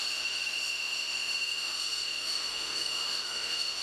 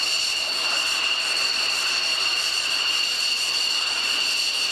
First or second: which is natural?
second